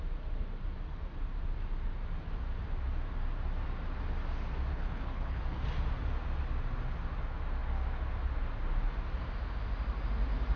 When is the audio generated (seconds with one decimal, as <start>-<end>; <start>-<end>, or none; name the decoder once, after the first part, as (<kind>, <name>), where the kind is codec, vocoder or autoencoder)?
4.7-5.4 (codec, HILCodec)